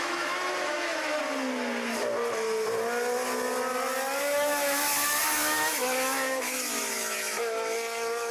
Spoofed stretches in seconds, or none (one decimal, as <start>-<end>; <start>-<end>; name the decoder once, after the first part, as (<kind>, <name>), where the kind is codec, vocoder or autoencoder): 0.0-1.2 (autoencoder, DAC-VAE); 4.2-8.3